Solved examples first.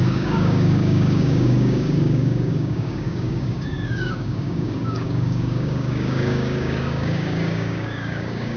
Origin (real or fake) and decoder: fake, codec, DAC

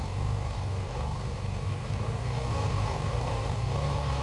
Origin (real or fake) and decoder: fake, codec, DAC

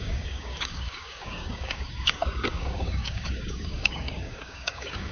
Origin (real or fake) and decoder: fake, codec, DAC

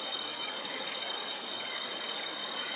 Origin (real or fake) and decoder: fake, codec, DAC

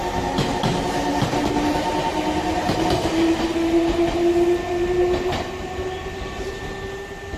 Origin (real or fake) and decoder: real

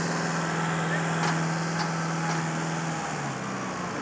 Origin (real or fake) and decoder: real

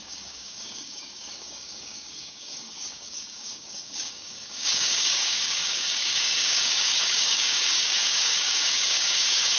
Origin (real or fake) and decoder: fake, codec, DAC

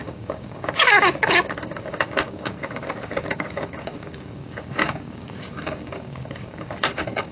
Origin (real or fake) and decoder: fake, codec, DAC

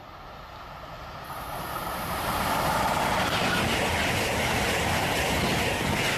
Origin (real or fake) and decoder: real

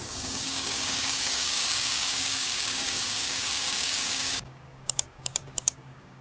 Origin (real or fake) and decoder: fake, codec, DAC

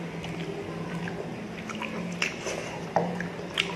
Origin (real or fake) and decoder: real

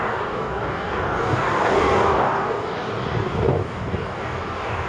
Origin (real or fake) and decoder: fake, codec, DAC